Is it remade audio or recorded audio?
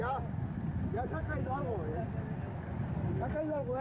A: recorded